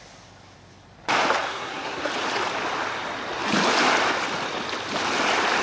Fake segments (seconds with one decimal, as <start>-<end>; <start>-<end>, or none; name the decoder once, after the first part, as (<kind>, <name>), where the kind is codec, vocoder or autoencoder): 1.5-2.1 (codec, SNAC)